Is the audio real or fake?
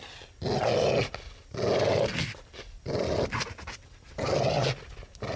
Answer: real